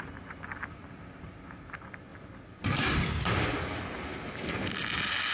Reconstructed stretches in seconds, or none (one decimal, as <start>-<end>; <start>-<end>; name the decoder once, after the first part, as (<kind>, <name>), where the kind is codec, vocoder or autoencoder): none